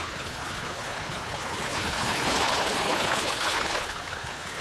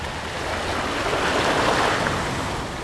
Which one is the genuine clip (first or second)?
second